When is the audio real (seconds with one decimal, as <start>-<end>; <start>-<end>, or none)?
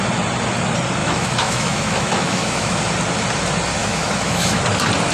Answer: 0.0-1.0; 2.8-3.8; 4.6-5.1